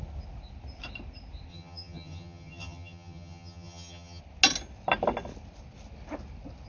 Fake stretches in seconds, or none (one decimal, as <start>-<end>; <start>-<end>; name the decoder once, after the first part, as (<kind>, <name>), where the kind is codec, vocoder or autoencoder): 1.5-4.2 (vocoder, HiFi-GAN)